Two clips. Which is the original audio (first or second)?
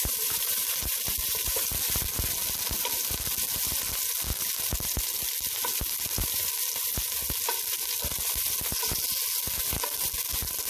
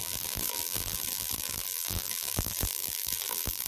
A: first